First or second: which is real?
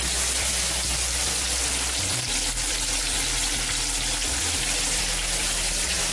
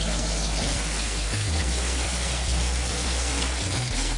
first